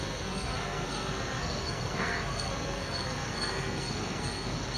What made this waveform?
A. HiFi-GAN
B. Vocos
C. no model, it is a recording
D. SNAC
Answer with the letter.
D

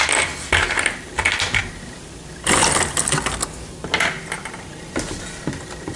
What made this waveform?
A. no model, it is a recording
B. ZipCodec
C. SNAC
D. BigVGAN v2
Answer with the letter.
A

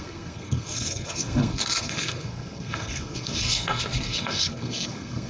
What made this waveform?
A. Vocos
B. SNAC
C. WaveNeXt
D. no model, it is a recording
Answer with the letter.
B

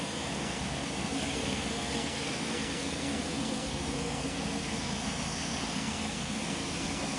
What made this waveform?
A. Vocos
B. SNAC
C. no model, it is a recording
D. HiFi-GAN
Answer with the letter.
B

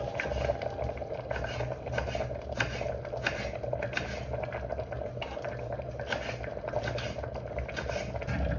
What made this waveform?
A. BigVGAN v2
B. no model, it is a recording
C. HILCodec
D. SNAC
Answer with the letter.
B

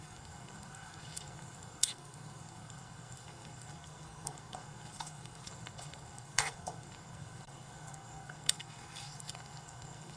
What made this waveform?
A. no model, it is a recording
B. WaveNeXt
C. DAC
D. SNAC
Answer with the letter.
D